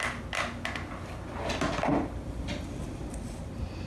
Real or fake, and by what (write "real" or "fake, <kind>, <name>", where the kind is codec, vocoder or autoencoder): real